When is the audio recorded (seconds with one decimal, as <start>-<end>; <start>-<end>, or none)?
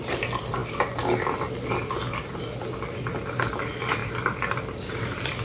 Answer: 0.0-5.4